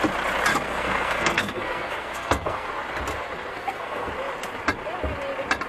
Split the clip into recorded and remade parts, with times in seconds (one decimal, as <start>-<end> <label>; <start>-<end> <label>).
0.0-0.5 recorded; 0.5-2.7 remade; 2.7-3.5 recorded; 3.5-4.1 remade; 4.1-5.7 recorded